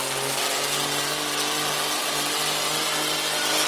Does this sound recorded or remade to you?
recorded